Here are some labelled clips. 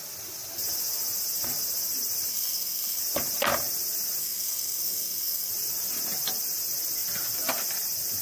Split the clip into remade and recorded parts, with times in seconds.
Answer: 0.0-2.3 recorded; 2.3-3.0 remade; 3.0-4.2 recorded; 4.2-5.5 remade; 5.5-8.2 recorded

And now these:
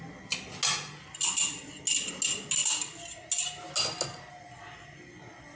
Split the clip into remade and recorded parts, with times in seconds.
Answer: 0.0-5.6 recorded

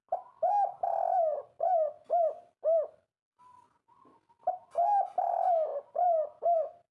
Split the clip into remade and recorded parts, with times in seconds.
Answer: 0.0-6.9 recorded

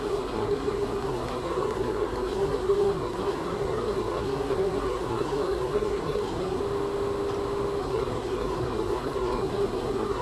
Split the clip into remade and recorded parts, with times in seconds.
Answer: 0.0-6.6 remade; 6.6-7.8 recorded; 7.8-10.2 remade

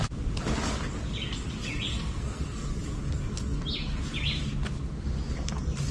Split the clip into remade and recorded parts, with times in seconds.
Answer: 0.0-1.9 recorded; 1.9-2.7 remade; 2.7-5.9 recorded

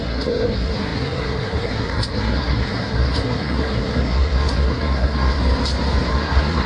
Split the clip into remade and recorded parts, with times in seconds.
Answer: 0.0-5.4 remade; 5.4-6.1 recorded; 6.1-6.7 remade